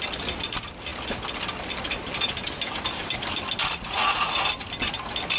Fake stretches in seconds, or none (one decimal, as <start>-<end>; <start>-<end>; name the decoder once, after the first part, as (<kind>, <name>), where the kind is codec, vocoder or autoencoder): 3.6-4.3 (vocoder, Vocos)